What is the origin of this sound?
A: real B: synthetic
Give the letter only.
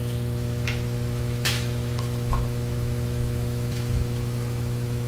B